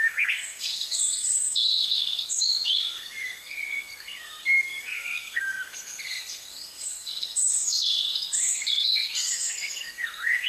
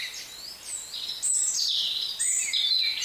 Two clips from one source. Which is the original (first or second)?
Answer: second